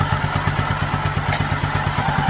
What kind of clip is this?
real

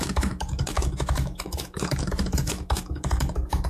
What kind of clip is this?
fake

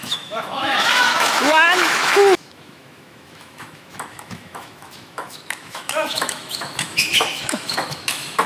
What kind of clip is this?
fake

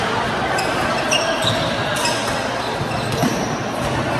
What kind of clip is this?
real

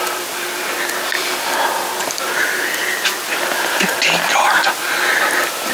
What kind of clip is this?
real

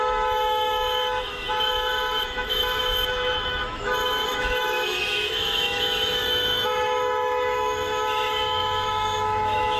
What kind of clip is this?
fake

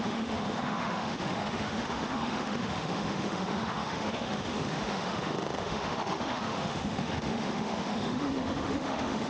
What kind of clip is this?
fake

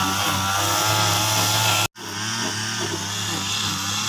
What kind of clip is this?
real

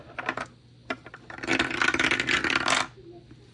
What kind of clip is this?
real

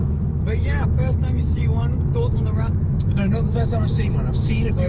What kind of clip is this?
fake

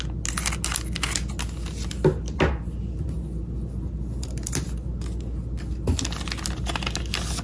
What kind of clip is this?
real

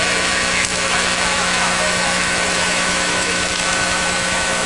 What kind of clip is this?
fake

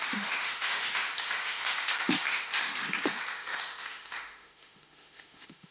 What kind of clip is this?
fake